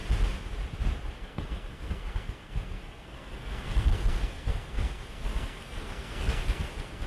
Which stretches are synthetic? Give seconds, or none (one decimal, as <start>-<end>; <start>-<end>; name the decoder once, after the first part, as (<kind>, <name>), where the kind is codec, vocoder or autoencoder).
1.1-7.1 (codec, SNAC)